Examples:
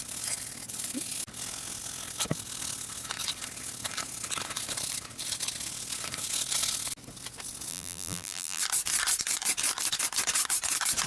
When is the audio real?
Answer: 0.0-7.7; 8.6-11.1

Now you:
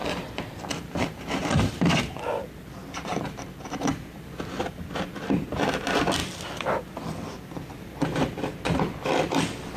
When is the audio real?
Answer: 1.7-3.1; 3.9-9.8

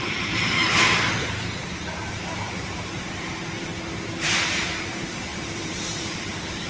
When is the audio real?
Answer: 0.6-2.1; 3.7-4.8